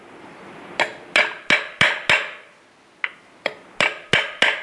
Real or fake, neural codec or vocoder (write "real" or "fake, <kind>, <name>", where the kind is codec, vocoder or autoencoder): real